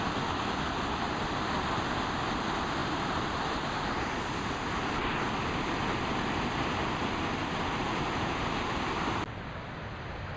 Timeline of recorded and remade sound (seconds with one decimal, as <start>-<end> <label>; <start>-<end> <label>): 0.0-2.8 recorded; 2.8-4.9 remade; 4.9-7.4 recorded; 7.4-8.4 remade; 8.4-10.4 recorded